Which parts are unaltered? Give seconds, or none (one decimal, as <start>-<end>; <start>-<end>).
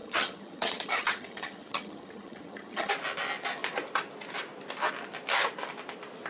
2.9-6.3